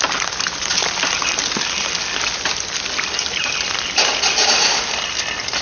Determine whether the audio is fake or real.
real